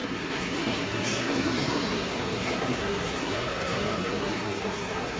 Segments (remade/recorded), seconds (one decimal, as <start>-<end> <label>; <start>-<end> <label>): 0.0-5.2 remade